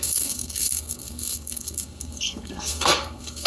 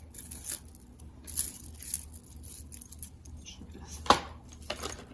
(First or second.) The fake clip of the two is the first